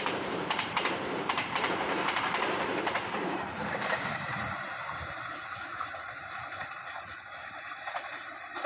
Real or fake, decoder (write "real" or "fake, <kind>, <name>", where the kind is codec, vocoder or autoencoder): fake, vocoder, BigVGAN v2